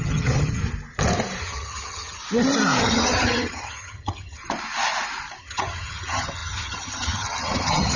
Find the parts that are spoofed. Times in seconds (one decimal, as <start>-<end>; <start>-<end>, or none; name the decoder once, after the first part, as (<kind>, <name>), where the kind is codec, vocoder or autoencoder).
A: 0.0-0.6 (vocoder, HiFi-GAN); 1.4-2.2; 2.8-4.4; 5.4-8.0